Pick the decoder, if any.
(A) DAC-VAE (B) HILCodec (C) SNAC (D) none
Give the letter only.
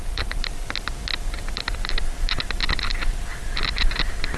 D